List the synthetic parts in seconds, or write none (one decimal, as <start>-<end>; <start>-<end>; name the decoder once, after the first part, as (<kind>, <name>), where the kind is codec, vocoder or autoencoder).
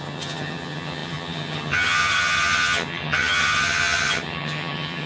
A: 0.0-5.1 (vocoder, HiFi-GAN)